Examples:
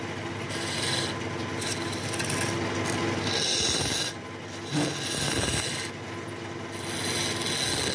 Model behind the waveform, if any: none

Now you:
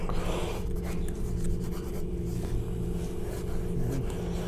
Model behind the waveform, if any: none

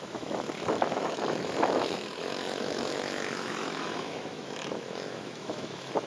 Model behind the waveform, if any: autoencoder, DAC-VAE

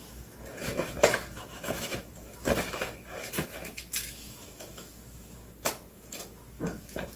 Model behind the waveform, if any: autoencoder, DAC-VAE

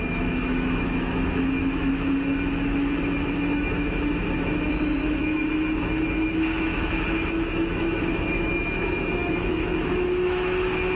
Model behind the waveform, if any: autoencoder, DAC-VAE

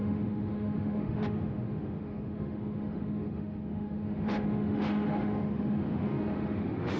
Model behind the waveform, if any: autoencoder, DAC-VAE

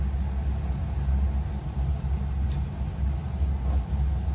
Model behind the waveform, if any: none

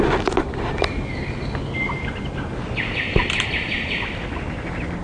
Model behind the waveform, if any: none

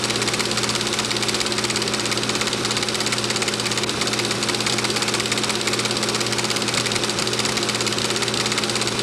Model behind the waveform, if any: none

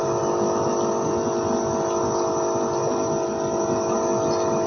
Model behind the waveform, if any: none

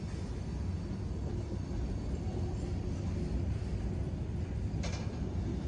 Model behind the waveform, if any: none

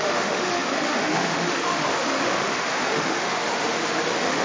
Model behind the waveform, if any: autoencoder, DAC-VAE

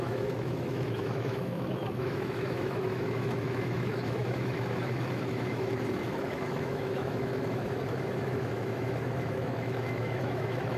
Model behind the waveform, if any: autoencoder, DAC-VAE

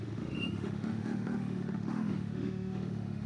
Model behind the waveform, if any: autoencoder, DAC-VAE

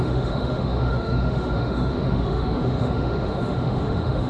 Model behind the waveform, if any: autoencoder, DAC-VAE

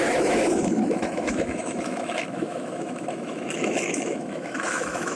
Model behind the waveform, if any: autoencoder, DAC-VAE